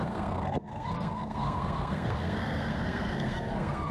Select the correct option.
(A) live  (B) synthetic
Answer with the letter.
B